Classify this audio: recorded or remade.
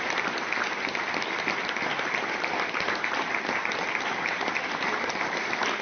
recorded